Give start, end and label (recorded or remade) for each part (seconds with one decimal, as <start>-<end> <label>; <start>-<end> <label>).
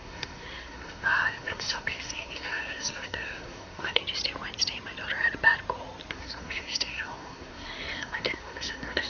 0.0-4.0 remade; 4.0-6.1 recorded; 6.1-9.1 remade